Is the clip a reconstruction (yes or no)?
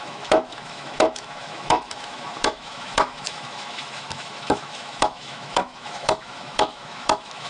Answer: yes